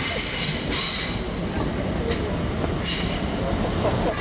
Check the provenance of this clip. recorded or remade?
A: recorded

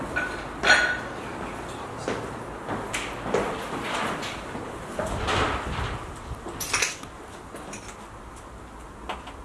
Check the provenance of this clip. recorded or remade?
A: recorded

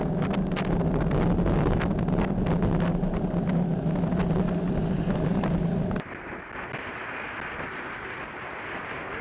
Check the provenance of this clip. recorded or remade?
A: recorded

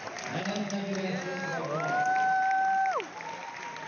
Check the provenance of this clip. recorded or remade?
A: recorded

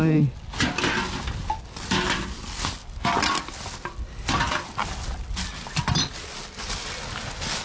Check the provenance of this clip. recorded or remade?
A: recorded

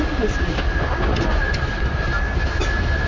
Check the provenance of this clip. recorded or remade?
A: recorded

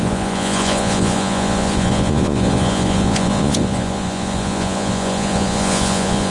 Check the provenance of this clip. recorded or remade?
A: remade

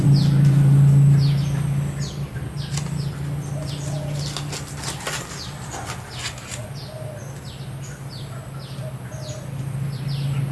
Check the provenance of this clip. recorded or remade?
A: recorded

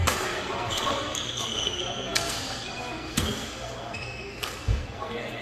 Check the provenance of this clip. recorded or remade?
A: remade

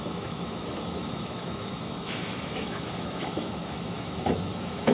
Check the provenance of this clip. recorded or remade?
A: remade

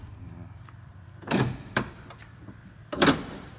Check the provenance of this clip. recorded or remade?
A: remade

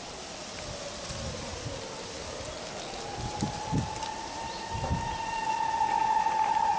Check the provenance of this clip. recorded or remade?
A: recorded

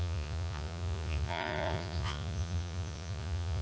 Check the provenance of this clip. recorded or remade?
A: remade